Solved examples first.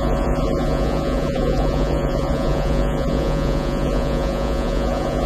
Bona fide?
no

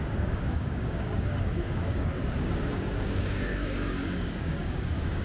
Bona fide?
no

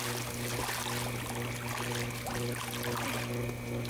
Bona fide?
yes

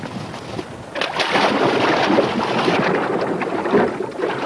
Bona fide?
yes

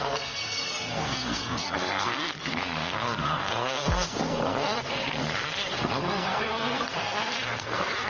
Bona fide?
no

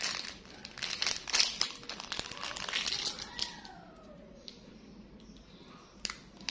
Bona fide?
yes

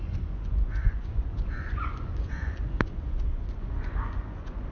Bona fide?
no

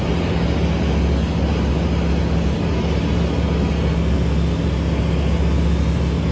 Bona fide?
yes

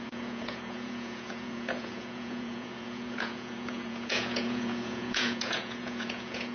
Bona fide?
no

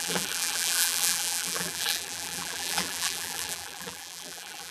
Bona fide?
no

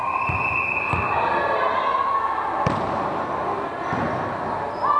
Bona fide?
yes